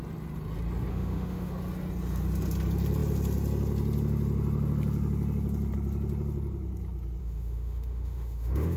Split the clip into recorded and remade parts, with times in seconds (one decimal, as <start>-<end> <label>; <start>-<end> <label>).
0.0-0.9 recorded; 0.9-1.5 remade; 1.5-7.2 recorded; 7.2-8.8 remade